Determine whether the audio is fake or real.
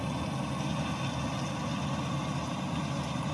real